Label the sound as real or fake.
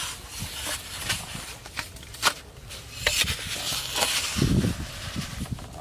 real